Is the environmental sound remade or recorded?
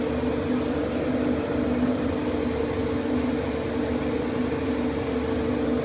recorded